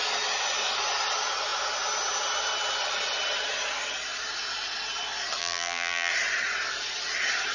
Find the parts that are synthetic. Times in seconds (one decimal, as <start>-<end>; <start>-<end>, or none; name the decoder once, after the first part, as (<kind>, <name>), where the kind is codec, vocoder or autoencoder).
5.4-6.1 (vocoder, BigVGAN v2)